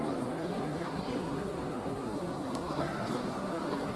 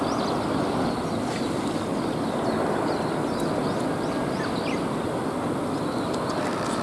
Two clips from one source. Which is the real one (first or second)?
second